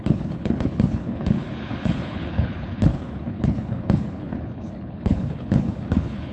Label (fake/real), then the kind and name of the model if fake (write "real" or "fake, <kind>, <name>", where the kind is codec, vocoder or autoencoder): fake, codec, HILCodec